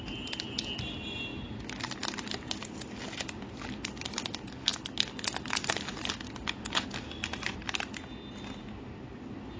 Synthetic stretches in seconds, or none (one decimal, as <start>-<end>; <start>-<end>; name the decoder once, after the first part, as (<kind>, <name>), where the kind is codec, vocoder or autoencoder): none